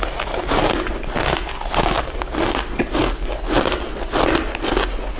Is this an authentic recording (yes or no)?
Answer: yes